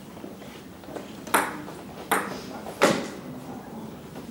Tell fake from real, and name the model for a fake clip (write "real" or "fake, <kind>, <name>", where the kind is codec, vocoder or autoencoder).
fake, vocoder, BigVGAN v2